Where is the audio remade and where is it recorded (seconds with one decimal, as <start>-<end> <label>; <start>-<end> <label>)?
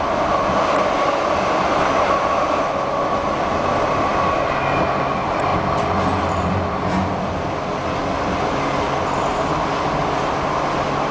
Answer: 0.0-11.1 recorded